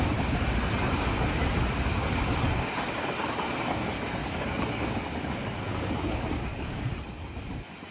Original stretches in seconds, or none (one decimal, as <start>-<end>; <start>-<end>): 0.0-4.2; 5.0-5.7; 6.9-7.9